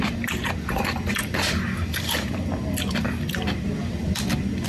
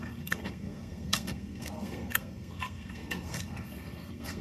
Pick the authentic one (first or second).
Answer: first